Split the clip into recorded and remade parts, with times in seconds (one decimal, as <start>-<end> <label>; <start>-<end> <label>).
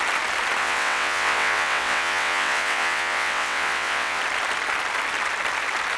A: 0.0-0.6 recorded; 0.6-4.2 remade; 4.2-6.0 recorded